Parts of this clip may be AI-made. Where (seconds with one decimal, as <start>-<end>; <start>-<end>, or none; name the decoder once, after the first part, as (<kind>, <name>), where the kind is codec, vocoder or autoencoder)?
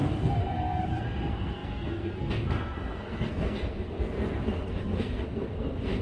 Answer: 0.0-6.0 (codec, SNAC)